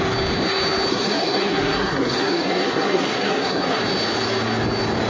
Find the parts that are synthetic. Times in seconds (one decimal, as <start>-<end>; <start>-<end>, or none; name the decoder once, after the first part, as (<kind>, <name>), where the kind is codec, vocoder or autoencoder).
0.9-3.8 (codec, SNAC)